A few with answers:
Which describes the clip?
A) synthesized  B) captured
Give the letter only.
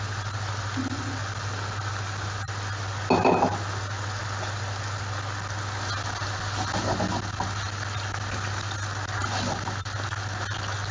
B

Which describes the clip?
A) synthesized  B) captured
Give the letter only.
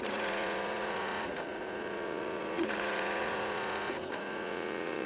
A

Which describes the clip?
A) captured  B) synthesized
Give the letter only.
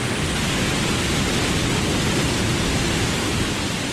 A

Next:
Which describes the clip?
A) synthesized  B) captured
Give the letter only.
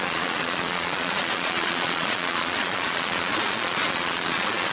A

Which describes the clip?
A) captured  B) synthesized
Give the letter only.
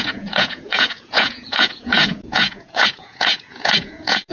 B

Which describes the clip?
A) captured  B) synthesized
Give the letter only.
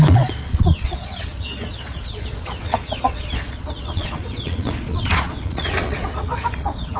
B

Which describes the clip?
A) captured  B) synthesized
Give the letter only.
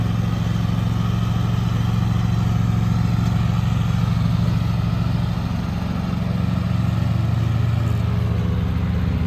A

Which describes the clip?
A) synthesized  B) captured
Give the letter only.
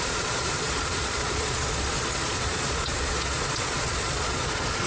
A